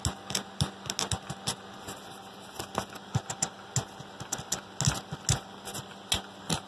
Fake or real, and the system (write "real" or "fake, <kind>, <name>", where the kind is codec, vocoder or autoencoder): real